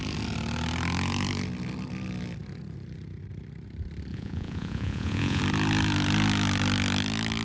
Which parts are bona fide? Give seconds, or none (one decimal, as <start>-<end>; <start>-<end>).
0.0-4.1; 5.4-7.4